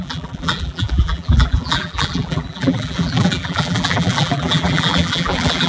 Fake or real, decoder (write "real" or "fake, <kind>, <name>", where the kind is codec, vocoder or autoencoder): fake, vocoder, BigVGAN v2